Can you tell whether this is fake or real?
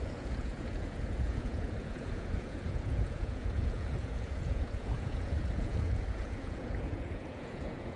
fake